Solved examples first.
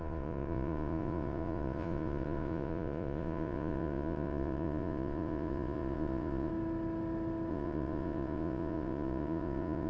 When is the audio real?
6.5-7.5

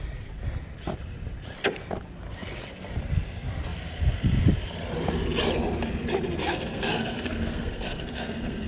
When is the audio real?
0.0-6.4

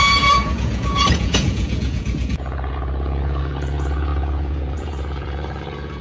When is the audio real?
none

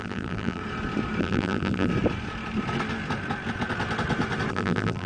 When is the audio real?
0.6-1.2; 1.9-4.5

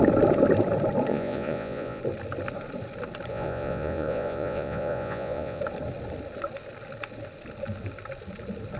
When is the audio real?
0.0-1.1; 2.0-3.3; 5.6-8.8

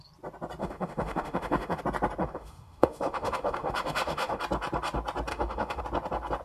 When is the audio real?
0.0-0.6; 1.8-2.2; 4.4-5.3; 5.8-6.4